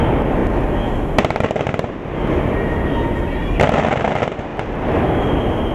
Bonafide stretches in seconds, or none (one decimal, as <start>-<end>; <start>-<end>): 0.0-5.7